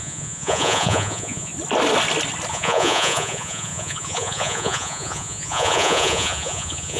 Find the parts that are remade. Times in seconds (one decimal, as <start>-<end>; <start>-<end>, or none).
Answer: 0.0-1.5; 2.5-7.0